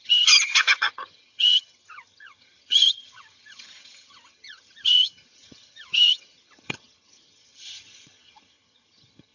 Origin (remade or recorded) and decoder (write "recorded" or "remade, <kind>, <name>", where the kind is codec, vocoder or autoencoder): remade, vocoder, HiFi-GAN